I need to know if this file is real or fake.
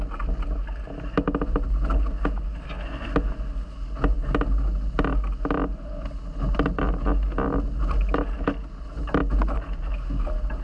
real